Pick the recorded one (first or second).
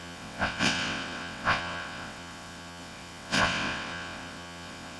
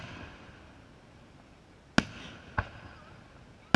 second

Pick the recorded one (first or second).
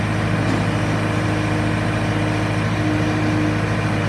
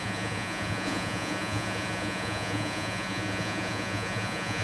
first